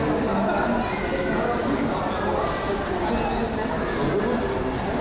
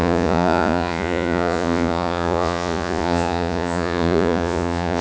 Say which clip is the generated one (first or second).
second